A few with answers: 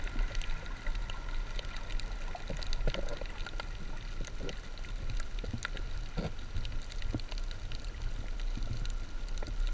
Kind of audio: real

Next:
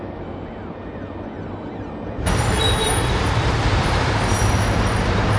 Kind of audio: fake